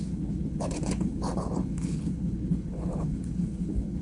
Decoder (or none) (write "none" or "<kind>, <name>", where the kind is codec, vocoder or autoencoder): codec, HILCodec